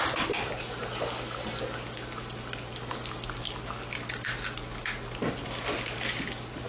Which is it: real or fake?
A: real